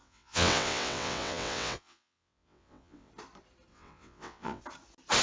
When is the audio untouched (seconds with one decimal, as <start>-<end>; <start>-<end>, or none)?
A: 3.1-3.7; 4.6-5.2